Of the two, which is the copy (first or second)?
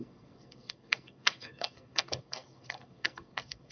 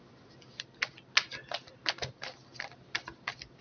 first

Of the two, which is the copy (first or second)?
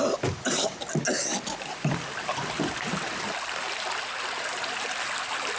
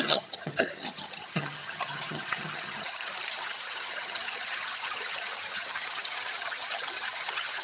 second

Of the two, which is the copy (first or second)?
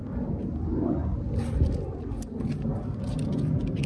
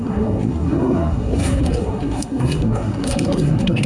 second